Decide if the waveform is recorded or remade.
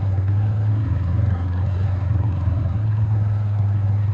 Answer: remade